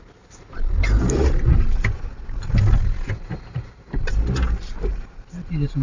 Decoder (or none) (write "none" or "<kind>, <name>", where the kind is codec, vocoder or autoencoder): none